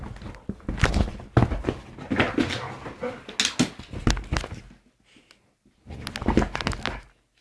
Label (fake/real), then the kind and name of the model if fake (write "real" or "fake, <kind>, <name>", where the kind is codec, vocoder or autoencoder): real